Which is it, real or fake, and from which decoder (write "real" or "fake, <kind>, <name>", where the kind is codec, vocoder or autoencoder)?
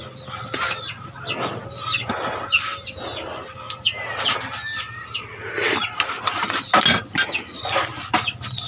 real